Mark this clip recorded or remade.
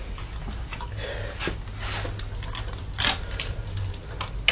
recorded